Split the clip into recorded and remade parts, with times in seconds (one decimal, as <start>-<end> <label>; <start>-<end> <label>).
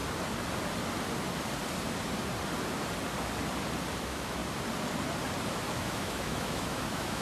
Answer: 0.0-4.0 recorded; 4.0-4.4 remade; 4.4-5.5 recorded; 5.5-7.2 remade